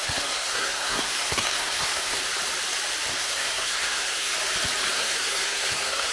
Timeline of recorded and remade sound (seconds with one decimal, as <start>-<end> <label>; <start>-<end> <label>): 0.0-2.2 remade; 2.2-3.1 recorded; 3.1-4.3 remade; 4.3-4.9 recorded; 4.9-6.1 remade